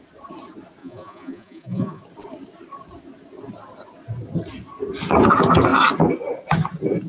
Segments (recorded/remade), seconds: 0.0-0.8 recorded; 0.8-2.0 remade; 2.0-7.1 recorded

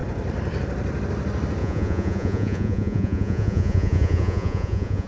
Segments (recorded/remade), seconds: 0.0-1.6 recorded; 1.6-5.1 remade

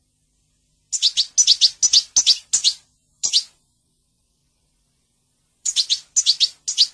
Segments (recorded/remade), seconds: 0.0-3.1 recorded; 3.1-5.7 remade; 5.7-6.9 recorded

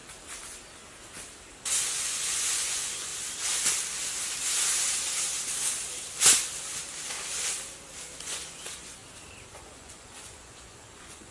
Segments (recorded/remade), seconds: 0.0-1.7 recorded; 1.7-3.1 remade; 3.1-8.2 recorded; 8.2-9.0 remade; 9.0-9.5 recorded; 9.5-11.3 remade

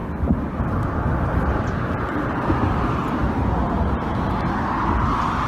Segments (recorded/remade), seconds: 0.0-5.5 recorded

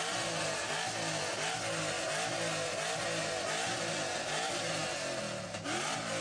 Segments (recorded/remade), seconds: 0.0-6.2 recorded